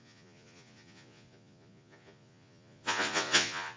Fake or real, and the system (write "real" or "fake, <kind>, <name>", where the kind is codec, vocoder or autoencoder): fake, vocoder, Vocos